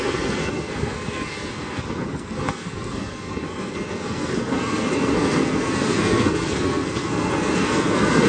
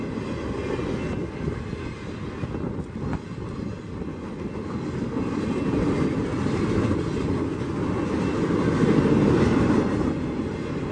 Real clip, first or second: second